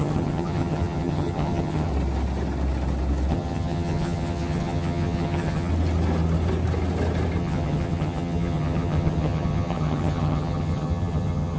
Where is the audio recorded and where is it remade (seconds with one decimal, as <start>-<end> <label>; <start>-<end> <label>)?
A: 0.0-1.9 remade; 1.9-3.3 recorded; 3.3-5.7 remade; 5.7-7.4 recorded; 7.4-11.6 remade

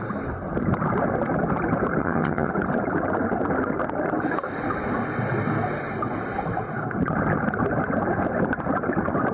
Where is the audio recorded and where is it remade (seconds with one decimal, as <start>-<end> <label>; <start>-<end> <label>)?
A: 0.0-2.0 recorded; 2.0-2.5 remade; 2.5-9.3 recorded

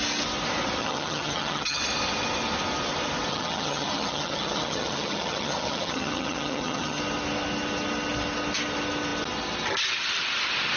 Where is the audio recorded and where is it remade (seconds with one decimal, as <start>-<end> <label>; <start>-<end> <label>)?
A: 0.0-0.8 recorded; 0.8-1.8 remade; 1.8-3.3 recorded; 3.3-7.0 remade; 7.0-10.8 recorded

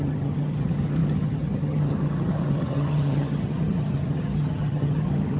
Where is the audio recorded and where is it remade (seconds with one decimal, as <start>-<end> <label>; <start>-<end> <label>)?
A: 0.0-5.4 remade

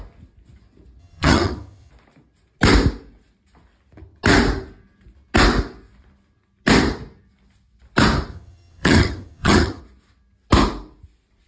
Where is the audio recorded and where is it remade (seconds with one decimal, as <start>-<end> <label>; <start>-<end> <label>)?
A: 0.0-1.0 recorded; 1.0-1.9 remade; 1.9-8.3 recorded; 8.3-9.8 remade; 9.8-11.5 recorded